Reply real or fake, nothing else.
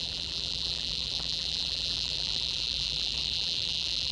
fake